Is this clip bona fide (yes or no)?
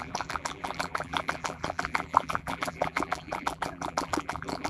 no